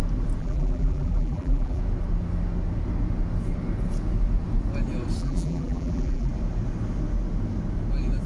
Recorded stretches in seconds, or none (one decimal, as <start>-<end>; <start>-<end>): 0.0-0.4; 1.8-5.2; 6.3-8.3

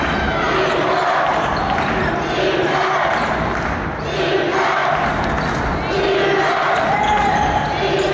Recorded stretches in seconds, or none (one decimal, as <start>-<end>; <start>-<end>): 0.0-8.1

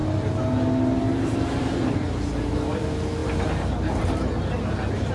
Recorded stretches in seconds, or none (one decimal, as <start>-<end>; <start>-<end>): 0.0-5.1

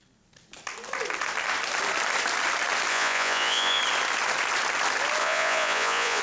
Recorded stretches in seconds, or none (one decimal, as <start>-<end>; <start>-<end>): 0.0-2.9; 3.8-5.2